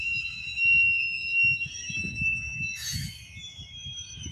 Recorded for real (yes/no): no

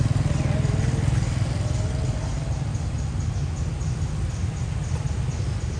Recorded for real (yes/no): yes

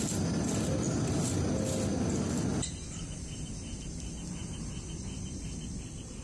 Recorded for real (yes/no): yes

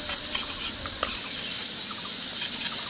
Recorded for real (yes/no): yes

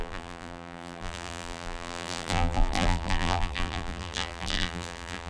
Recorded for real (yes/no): no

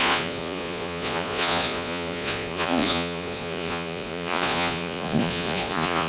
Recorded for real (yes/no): no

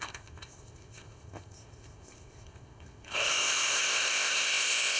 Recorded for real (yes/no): no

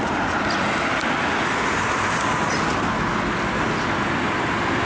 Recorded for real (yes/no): yes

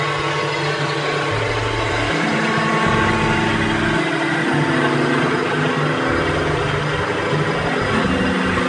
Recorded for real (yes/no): yes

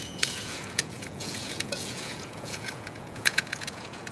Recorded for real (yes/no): no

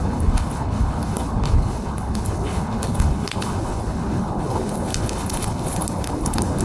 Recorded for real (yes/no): no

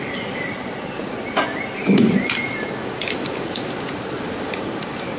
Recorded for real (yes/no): yes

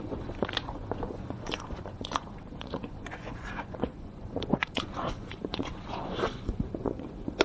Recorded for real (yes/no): no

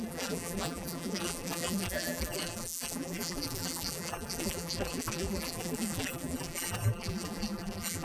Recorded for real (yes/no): no